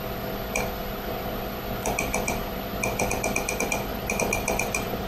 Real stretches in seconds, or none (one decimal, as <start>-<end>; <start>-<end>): 0.0-3.9